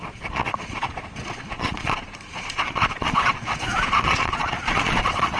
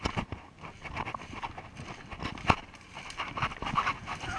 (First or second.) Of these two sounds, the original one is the second